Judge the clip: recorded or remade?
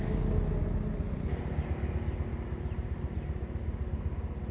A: recorded